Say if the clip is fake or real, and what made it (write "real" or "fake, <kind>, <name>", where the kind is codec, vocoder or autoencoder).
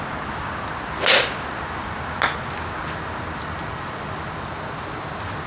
real